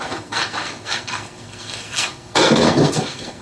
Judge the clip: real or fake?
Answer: fake